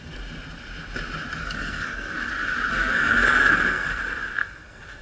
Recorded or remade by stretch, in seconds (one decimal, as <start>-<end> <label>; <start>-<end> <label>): 0.0-1.4 recorded; 1.4-2.3 remade; 2.3-2.7 recorded; 2.7-4.0 remade; 4.0-4.4 recorded; 4.4-5.0 remade